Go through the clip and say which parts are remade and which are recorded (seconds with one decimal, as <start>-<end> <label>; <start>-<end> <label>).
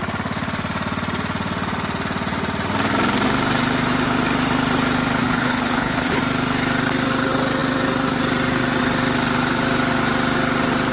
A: 0.0-5.2 recorded; 5.2-6.2 remade; 6.2-10.9 recorded